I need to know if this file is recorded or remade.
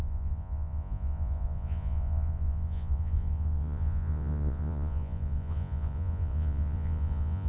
remade